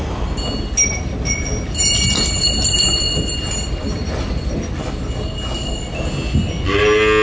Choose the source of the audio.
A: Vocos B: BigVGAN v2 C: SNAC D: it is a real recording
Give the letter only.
D